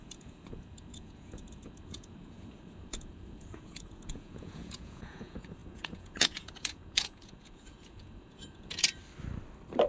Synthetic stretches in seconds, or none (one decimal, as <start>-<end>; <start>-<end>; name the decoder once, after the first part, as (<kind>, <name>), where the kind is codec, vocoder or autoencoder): 0.0-9.0 (vocoder, Vocos)